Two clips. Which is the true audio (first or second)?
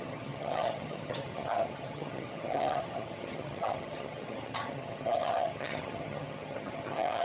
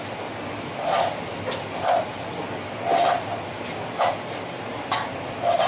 second